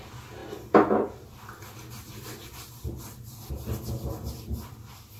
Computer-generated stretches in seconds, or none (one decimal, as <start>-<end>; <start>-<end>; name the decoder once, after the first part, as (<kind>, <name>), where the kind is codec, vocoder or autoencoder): none